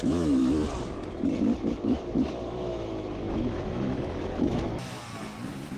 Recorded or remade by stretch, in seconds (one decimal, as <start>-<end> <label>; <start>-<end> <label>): 0.0-0.4 remade; 0.4-1.6 recorded; 1.6-4.7 remade; 4.7-5.8 recorded